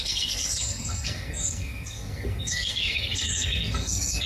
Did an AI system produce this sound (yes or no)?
yes